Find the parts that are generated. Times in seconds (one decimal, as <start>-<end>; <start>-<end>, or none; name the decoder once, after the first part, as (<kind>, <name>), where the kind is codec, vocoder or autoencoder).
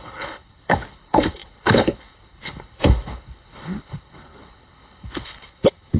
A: 0.0-6.0 (codec, HILCodec)